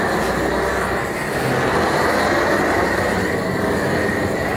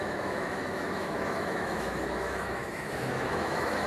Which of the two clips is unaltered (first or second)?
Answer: first